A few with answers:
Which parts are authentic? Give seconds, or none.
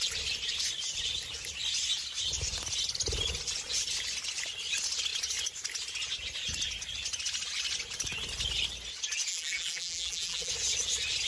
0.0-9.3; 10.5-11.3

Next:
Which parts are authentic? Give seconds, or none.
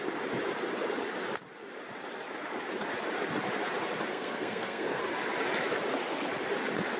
0.0-4.1; 5.0-7.0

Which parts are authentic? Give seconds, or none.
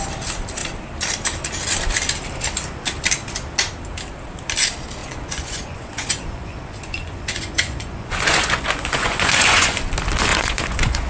0.0-5.0; 9.9-10.3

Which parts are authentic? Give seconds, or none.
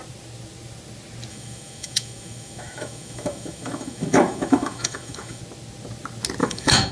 0.0-1.3; 5.4-6.4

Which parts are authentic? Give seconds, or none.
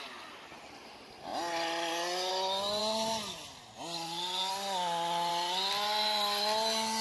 0.0-7.0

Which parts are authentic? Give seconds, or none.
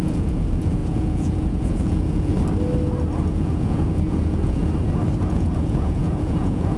2.3-3.2; 4.6-5.2